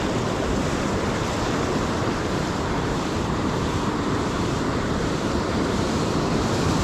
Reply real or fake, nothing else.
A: fake